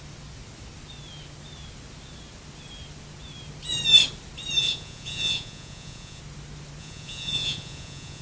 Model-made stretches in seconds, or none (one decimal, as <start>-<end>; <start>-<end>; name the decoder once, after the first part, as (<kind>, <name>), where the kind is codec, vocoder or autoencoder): 4.6-6.2 (vocoder, Vocos); 6.8-8.2